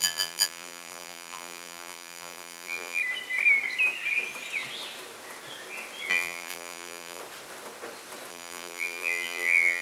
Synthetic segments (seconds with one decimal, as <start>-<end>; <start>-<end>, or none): 0.0-3.0; 6.1-7.2; 8.3-9.8